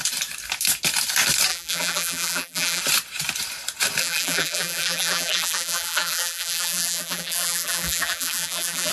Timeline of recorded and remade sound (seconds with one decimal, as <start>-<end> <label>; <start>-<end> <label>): 0.0-1.5 recorded; 1.5-2.8 remade; 2.8-4.0 recorded; 4.0-8.9 remade